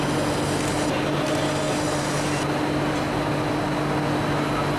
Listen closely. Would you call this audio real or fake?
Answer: real